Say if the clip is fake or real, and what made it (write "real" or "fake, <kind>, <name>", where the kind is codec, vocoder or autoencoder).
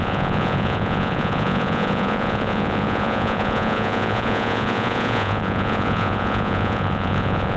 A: fake, vocoder, Vocos